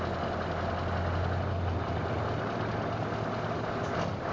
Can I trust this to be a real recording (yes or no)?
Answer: yes